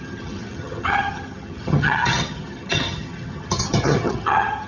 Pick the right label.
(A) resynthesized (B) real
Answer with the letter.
A